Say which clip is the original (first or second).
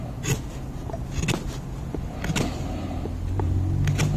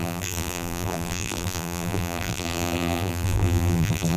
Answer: first